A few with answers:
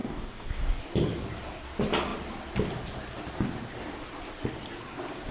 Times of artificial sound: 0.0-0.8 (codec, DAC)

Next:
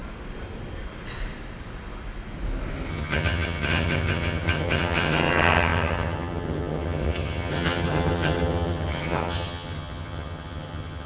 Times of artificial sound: 2.9-11.1 (vocoder, HiFi-GAN)